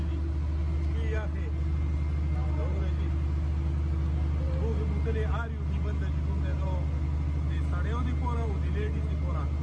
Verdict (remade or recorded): recorded